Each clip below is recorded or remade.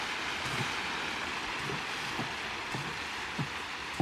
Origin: recorded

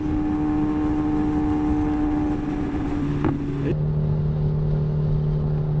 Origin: recorded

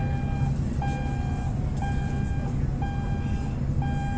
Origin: recorded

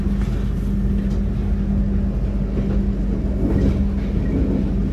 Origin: recorded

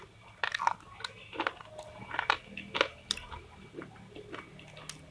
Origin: recorded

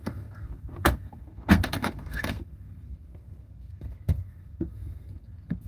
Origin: remade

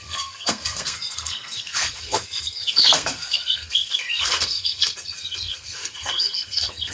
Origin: remade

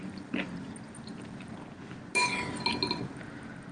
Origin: recorded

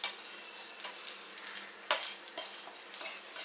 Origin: recorded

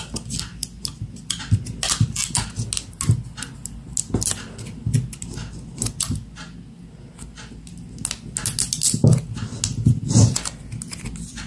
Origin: recorded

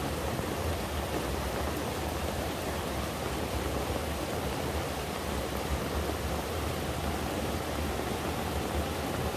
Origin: recorded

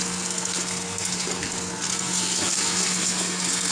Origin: remade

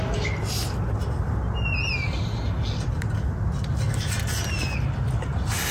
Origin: recorded